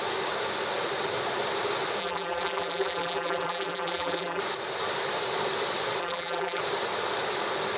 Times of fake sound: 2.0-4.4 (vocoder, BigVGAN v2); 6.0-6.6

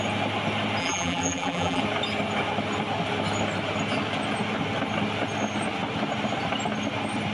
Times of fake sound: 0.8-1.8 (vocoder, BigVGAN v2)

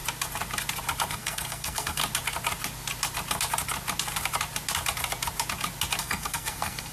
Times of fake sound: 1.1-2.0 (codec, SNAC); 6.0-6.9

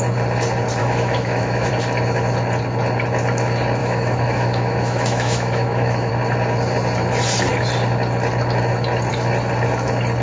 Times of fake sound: 0.8-1.7 (autoencoder, DAC-VAE); 3.8-6.1